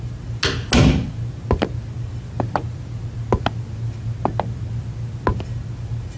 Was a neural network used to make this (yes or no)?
no